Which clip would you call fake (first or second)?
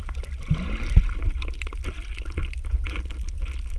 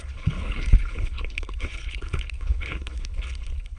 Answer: second